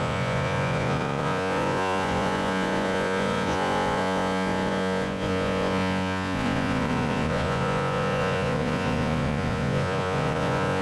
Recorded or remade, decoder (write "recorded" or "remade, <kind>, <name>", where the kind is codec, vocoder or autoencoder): remade, vocoder, Vocos